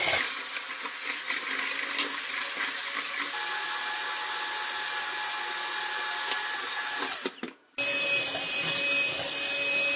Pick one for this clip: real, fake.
real